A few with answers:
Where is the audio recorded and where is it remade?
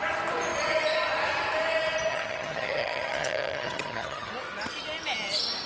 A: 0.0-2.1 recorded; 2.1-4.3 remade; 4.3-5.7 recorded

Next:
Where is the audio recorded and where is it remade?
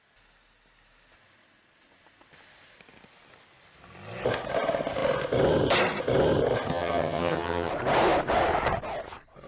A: 0.0-6.7 recorded; 6.7-7.7 remade; 7.7-9.5 recorded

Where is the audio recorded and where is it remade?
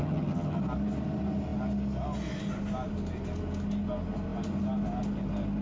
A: 0.0-0.6 remade; 0.6-5.6 recorded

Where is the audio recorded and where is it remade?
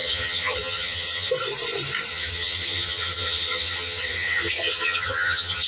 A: 0.0-1.3 remade; 1.3-2.1 recorded; 2.1-5.7 remade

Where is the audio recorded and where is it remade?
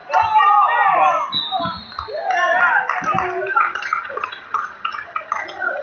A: 0.0-3.5 recorded; 3.5-5.8 remade